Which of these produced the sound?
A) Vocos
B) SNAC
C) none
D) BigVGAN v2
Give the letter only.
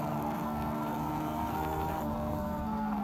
B